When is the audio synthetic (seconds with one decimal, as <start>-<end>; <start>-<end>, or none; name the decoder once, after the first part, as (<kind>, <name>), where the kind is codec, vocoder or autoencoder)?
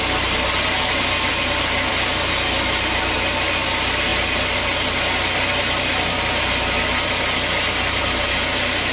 none